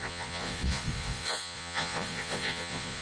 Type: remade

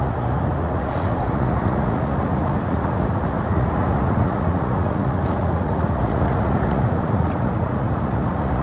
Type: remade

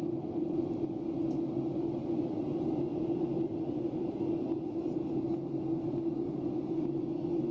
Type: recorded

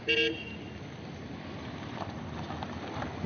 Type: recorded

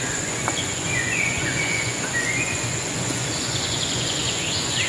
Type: remade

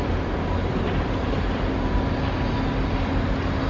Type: recorded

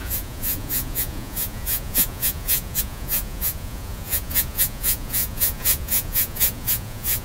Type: remade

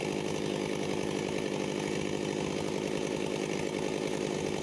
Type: recorded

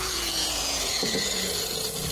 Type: remade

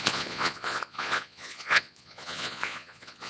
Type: remade